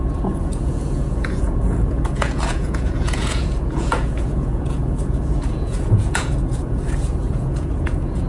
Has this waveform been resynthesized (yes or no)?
yes